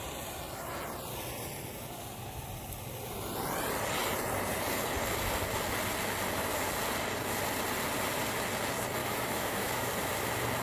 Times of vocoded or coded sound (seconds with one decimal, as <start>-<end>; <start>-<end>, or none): 9.0-9.9